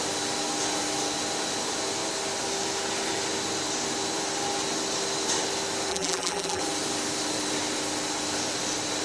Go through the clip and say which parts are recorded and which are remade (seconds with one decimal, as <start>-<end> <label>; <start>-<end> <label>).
0.0-5.9 recorded; 5.9-6.6 remade; 6.6-9.0 recorded